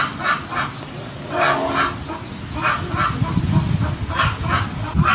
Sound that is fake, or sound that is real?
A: real